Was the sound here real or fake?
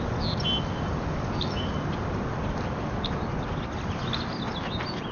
real